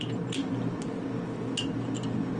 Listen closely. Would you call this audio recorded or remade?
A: recorded